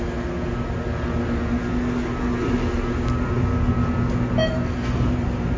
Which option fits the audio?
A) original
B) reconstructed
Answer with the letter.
A